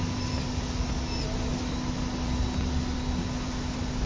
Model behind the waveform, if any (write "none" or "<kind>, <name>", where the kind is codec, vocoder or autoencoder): none